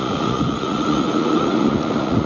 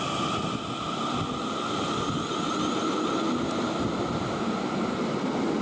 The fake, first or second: first